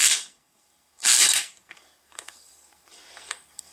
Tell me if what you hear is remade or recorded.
remade